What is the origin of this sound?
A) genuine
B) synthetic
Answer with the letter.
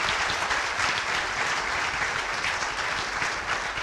B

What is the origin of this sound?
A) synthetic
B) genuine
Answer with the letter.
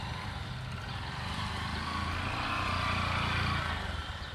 B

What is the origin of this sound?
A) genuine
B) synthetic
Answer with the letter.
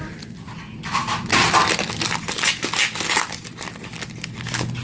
A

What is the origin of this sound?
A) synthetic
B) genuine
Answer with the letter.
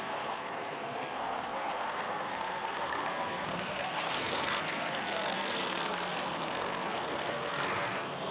A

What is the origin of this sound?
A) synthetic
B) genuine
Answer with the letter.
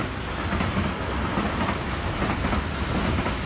B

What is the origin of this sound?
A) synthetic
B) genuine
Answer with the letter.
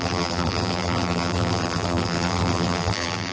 A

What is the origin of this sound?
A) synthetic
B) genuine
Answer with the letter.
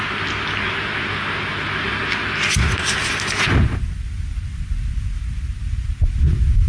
B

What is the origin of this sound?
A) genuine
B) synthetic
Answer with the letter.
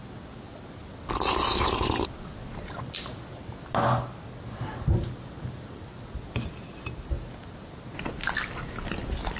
A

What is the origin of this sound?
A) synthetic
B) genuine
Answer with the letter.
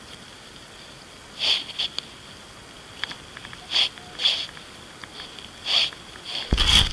B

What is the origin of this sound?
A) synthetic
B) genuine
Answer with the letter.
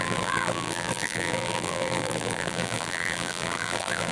A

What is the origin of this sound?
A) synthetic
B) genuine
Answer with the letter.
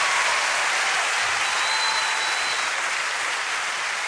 B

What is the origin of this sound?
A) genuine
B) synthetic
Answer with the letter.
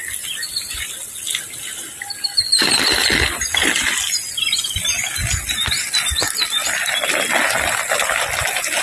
A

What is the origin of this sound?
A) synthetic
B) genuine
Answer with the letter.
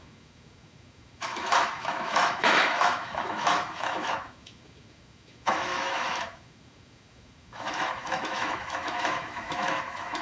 A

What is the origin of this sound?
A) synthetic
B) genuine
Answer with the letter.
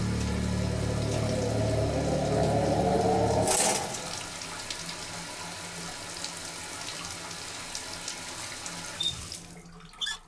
B